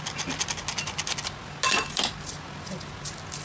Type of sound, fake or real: real